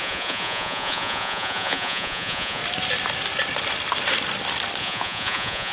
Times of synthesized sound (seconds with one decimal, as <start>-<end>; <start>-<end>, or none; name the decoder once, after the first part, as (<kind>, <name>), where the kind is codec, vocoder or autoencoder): 0.0-2.6 (vocoder, Vocos); 4.8-5.7